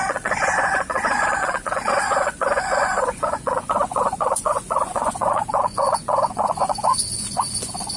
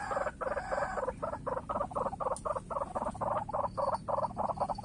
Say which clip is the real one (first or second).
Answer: second